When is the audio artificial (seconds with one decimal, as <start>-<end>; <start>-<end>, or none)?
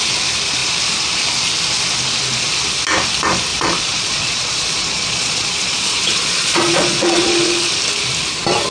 3.5-7.7